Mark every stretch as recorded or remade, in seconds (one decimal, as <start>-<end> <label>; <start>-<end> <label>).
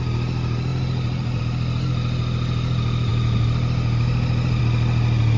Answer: 0.0-0.7 recorded; 0.7-1.4 remade; 1.4-5.4 recorded